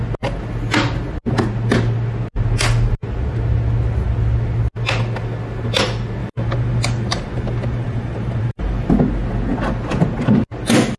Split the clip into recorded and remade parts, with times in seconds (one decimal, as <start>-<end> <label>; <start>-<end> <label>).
0.0-6.2 recorded; 6.2-8.9 remade; 8.9-11.0 recorded